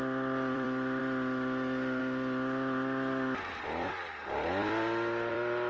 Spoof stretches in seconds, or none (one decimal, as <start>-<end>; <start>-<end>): 0.0-1.0; 2.0-5.7